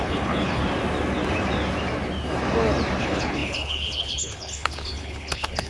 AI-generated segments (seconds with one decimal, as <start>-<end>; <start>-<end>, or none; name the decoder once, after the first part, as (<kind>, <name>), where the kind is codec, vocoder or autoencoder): 0.0-0.6 (codec, HILCodec); 3.0-5.7